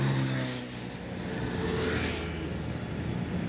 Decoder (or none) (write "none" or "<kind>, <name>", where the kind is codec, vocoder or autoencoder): none